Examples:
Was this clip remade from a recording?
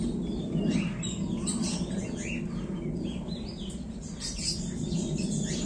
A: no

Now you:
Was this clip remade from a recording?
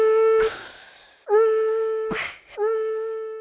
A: yes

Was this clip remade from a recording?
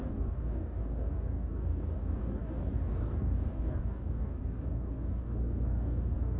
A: yes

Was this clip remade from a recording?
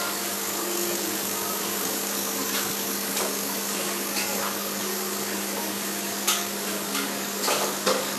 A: yes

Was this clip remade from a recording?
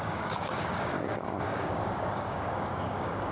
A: yes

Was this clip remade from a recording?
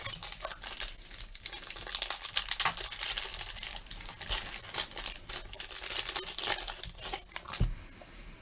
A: no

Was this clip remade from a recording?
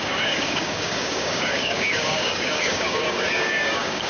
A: yes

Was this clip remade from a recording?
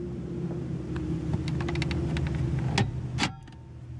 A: no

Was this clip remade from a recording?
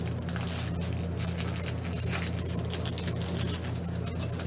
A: no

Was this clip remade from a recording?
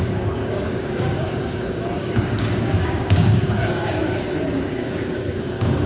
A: yes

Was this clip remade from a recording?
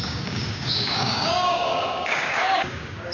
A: yes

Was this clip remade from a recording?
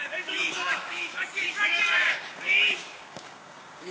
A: yes